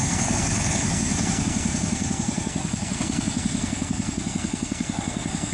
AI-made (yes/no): yes